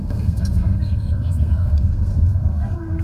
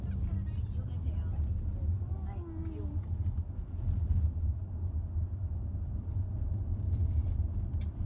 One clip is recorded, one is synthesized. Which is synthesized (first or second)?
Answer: first